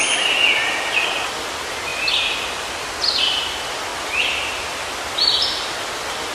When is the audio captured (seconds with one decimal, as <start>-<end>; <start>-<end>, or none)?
0.0-6.3